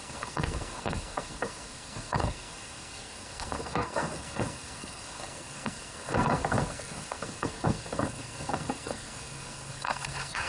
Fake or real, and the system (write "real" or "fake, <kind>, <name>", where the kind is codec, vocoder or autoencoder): fake, codec, SNAC